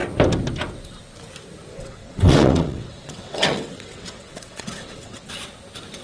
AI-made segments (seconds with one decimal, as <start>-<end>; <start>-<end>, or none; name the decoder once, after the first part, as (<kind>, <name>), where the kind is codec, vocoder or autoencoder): 1.7-5.3 (vocoder, WaveNeXt)